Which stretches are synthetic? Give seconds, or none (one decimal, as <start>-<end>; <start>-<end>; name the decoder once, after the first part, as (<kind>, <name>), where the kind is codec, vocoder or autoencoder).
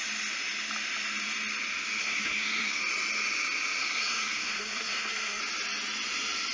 2.0-2.8 (codec, SNAC); 3.8-5.4